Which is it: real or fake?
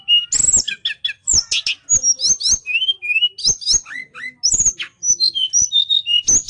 real